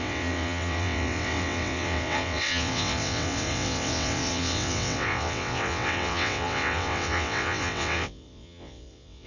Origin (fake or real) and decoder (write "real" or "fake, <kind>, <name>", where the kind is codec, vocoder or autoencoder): fake, vocoder, WaveNeXt